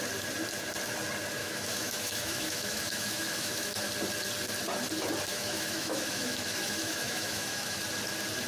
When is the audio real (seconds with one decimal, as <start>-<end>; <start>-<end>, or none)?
0.0-1.4; 3.8-5.3; 7.8-8.5